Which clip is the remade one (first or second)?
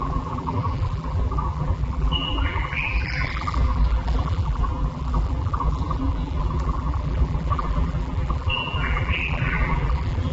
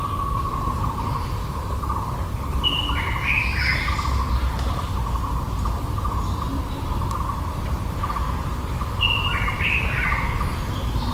first